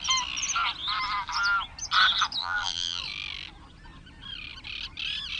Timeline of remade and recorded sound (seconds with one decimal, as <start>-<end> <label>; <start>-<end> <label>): 0.0-2.4 recorded; 2.4-3.0 remade; 3.0-5.4 recorded